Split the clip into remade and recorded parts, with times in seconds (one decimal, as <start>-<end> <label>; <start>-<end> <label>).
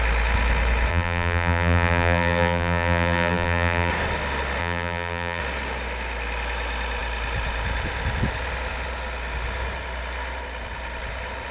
0.0-0.9 recorded; 0.9-3.9 remade; 3.9-4.6 recorded; 4.6-5.4 remade; 5.4-11.5 recorded